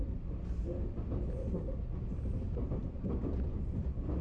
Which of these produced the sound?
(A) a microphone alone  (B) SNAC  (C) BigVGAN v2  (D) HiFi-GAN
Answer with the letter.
A